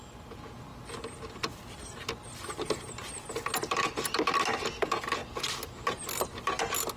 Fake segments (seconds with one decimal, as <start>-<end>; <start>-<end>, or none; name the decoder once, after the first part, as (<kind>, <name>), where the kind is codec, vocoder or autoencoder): none